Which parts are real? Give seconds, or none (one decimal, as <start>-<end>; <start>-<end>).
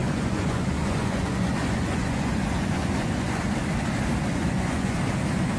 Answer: 3.4-4.3; 5.0-5.6